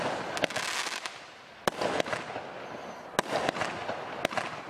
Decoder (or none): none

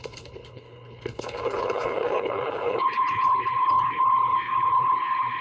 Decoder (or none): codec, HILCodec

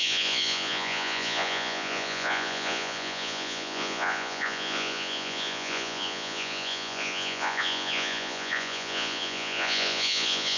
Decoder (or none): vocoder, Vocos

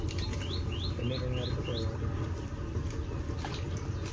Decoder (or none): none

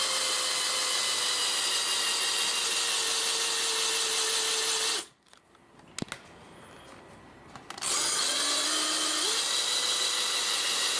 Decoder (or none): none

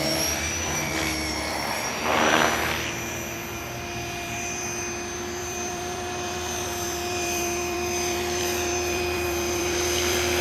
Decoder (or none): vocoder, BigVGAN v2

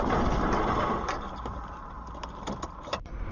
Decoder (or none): none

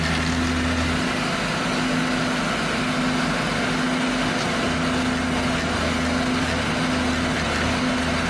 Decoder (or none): none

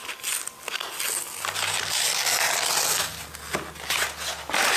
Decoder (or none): none